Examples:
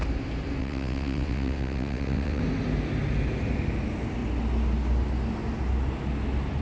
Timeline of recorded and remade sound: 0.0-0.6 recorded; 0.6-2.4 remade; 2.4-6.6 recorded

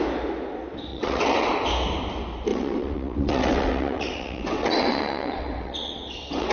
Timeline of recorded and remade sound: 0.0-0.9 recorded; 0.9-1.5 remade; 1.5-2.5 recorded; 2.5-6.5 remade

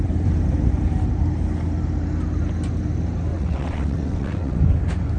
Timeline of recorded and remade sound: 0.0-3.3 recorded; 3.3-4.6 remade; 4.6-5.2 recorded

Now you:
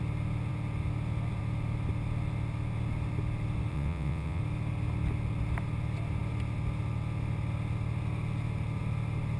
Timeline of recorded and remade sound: 0.0-3.7 recorded; 3.7-4.4 remade; 4.4-9.4 recorded

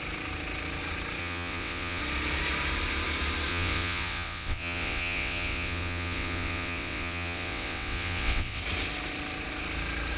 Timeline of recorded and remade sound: 0.0-1.2 recorded; 1.2-2.0 remade; 2.0-3.5 recorded; 3.5-8.6 remade; 8.6-10.2 recorded

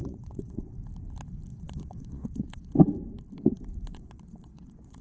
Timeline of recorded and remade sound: 0.0-0.7 remade; 0.7-1.5 recorded; 1.5-2.7 remade; 2.7-3.9 recorded; 3.9-5.0 remade

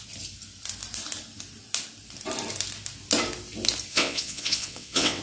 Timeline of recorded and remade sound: 0.0-3.9 recorded; 3.9-5.2 remade

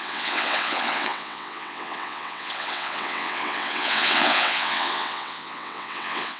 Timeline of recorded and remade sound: 0.0-6.4 remade